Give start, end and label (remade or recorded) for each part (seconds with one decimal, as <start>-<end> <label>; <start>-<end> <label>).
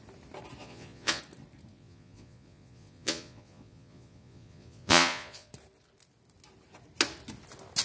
0.0-0.6 recorded; 0.6-1.2 remade; 1.2-1.7 recorded; 1.7-5.5 remade; 5.5-7.8 recorded